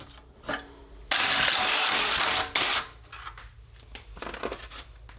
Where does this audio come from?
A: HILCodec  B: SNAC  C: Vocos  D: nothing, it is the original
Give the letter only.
D